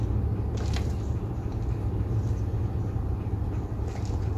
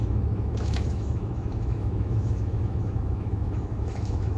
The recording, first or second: first